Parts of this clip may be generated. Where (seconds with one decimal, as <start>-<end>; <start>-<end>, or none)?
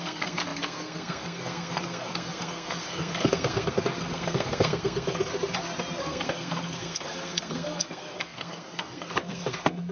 0.0-5.3; 6.0-9.9